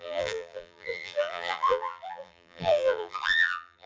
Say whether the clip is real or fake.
fake